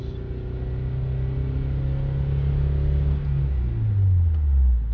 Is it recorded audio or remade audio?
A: recorded